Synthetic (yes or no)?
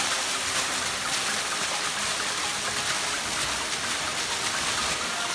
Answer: no